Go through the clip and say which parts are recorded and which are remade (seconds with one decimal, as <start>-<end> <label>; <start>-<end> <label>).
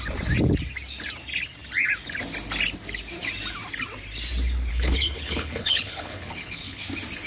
0.0-4.7 recorded; 4.7-6.8 remade; 6.8-7.3 recorded